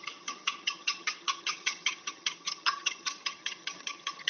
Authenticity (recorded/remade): remade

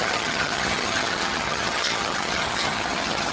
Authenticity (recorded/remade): remade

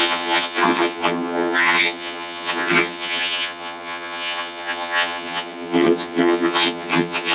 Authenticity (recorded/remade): remade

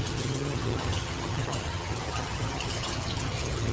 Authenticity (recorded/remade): remade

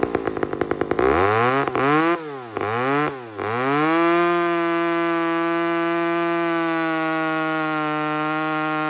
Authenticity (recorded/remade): recorded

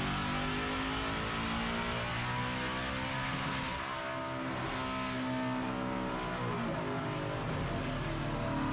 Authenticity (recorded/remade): recorded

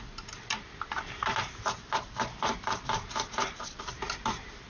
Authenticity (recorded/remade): recorded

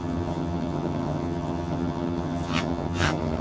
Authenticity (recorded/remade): remade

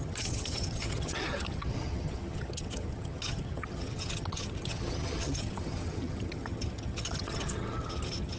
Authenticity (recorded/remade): remade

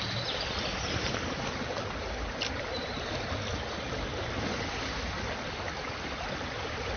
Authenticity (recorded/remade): recorded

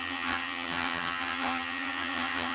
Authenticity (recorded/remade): remade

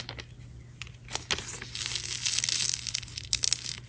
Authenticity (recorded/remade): recorded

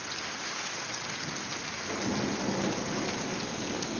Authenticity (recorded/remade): recorded